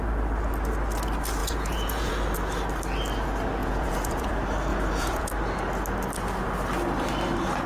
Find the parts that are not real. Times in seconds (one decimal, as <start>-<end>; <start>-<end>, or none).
1.4-2.1; 3.6-4.3; 4.7-5.3